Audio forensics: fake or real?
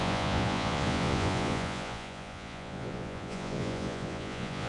fake